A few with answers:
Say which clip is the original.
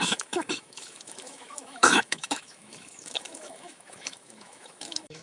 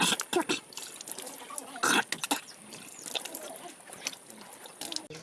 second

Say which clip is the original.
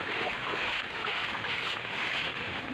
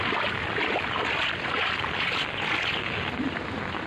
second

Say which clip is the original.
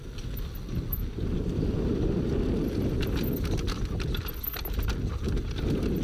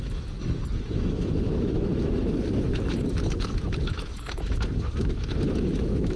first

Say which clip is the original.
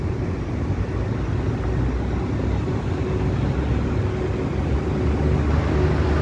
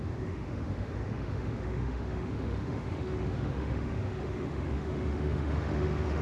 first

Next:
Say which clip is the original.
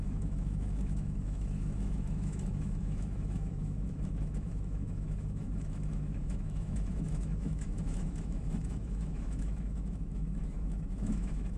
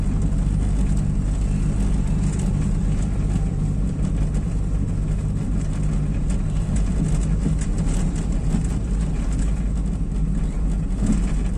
second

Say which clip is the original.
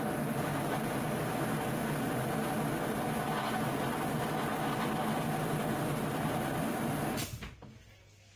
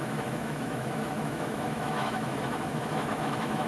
first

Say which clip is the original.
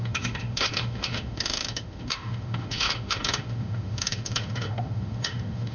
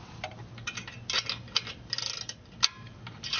second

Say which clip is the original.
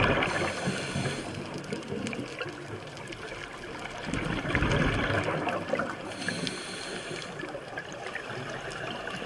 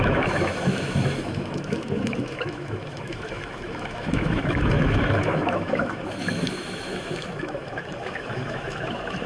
first